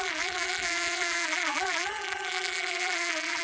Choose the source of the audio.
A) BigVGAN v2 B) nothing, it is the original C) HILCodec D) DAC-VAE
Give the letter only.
A